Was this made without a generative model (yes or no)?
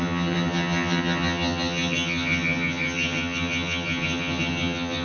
no